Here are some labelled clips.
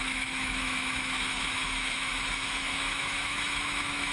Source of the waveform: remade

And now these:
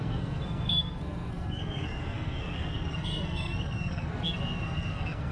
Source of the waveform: remade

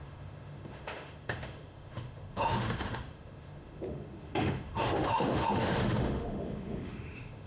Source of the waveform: remade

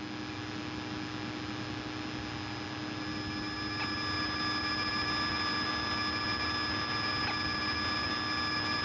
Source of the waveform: recorded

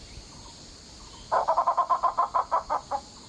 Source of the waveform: recorded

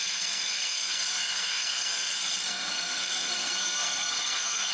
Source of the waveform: remade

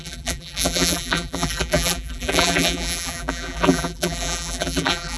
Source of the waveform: remade